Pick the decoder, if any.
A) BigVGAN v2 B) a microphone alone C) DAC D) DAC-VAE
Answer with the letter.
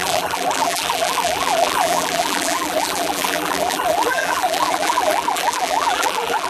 A